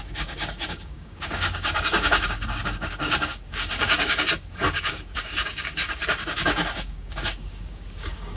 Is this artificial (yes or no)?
yes